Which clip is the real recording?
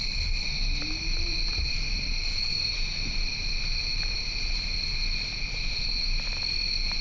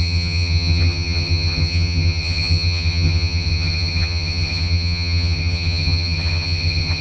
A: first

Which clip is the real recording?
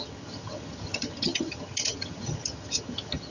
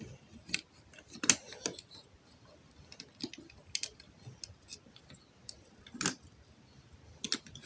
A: second